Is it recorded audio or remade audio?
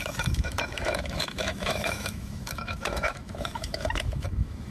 remade